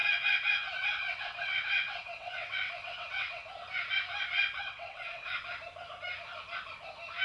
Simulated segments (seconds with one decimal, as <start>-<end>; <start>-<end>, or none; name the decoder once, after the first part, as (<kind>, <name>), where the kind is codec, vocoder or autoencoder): 0.0-3.5 (vocoder, WaveNeXt); 4.6-5.4